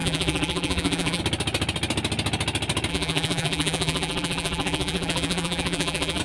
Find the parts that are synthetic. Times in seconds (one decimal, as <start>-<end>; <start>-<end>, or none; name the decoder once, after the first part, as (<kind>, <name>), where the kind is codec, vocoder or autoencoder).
0.0-1.2 (vocoder, BigVGAN v2); 2.9-6.2